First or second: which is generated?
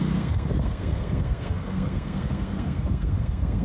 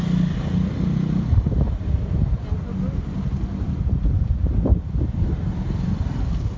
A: first